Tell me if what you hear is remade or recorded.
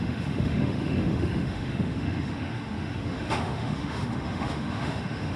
remade